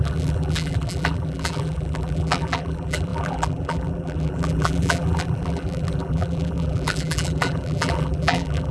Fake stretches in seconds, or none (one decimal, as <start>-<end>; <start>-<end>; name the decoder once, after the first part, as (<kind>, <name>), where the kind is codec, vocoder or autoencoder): 0.0-8.7 (vocoder, BigVGAN v2)